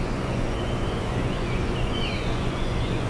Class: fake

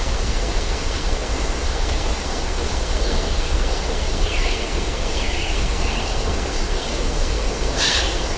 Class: fake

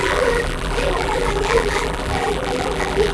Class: fake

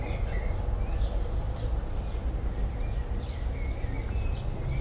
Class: real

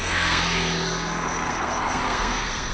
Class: fake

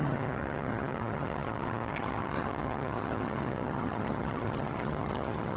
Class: fake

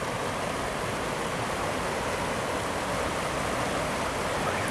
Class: real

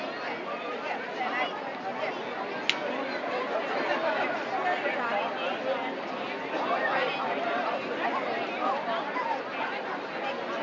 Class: real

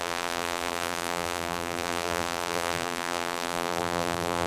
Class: fake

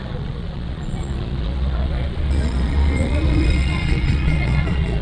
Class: fake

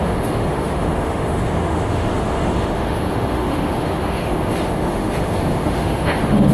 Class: fake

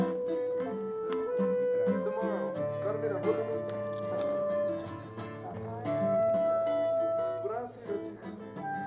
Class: real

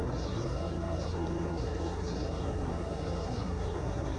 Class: fake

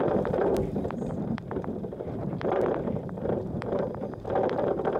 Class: fake